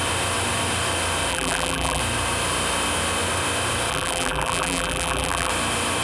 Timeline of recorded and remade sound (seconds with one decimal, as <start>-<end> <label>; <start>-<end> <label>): 0.0-1.3 recorded; 1.3-2.0 remade; 2.0-3.9 recorded; 3.9-5.5 remade; 5.5-6.0 recorded